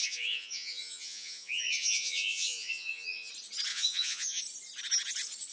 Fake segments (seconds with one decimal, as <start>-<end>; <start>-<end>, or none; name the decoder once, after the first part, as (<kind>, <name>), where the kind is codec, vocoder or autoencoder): 0.0-3.3 (vocoder, Vocos); 3.7-4.4